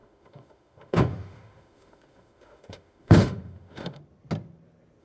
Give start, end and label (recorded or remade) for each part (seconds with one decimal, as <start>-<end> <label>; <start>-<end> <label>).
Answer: 0.0-4.0 remade; 4.0-5.0 recorded